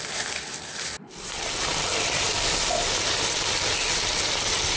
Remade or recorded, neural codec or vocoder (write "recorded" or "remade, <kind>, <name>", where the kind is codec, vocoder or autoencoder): remade, vocoder, BigVGAN v2